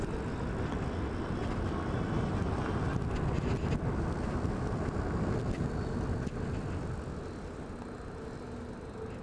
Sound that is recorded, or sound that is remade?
recorded